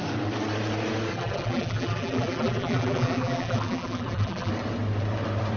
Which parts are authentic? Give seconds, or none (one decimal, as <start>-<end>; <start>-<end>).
0.0-1.1; 4.5-5.6

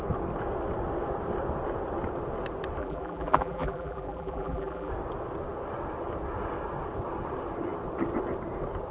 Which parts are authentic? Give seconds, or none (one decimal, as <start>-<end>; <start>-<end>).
0.0-2.8; 4.9-8.9

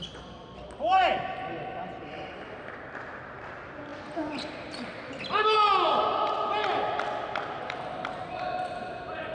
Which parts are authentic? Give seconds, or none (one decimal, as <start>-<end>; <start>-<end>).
0.0-9.3

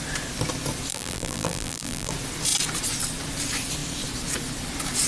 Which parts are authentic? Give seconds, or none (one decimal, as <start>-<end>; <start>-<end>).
0.0-0.9; 2.1-5.1

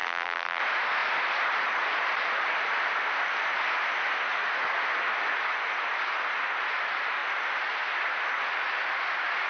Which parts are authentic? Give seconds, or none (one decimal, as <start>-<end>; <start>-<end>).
0.6-9.5

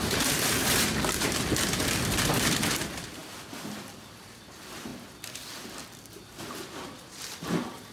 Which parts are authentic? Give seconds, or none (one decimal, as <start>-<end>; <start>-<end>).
4.9-6.0